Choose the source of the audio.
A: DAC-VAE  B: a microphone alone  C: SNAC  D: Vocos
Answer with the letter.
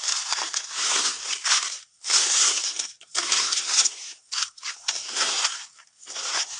C